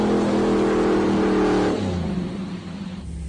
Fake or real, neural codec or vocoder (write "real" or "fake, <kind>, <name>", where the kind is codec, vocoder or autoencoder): real